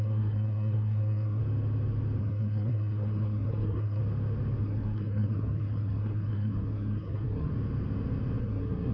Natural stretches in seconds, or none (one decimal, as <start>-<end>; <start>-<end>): 1.4-2.2; 4.0-4.6; 7.5-8.4